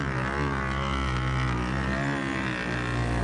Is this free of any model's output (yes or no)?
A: yes